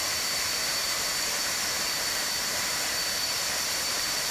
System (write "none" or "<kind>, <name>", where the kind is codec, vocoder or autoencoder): vocoder, BigVGAN v2